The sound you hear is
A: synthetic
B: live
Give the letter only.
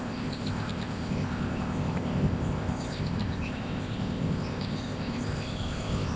A